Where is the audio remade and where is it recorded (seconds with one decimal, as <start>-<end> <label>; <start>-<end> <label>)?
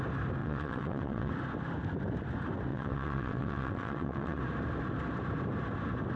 0.0-0.4 recorded; 0.4-1.3 remade; 1.3-2.7 recorded; 2.7-4.4 remade; 4.4-6.2 recorded